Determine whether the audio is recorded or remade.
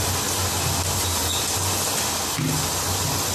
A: recorded